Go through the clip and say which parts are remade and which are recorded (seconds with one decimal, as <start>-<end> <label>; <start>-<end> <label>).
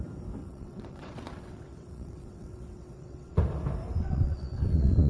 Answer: 0.0-0.4 recorded; 0.4-3.4 remade; 3.4-4.0 recorded; 4.0-5.1 remade